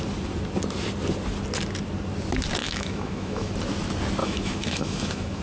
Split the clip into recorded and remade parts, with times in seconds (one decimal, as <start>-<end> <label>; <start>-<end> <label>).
0.0-2.6 recorded; 2.6-3.5 remade; 3.5-4.2 recorded; 4.2-5.4 remade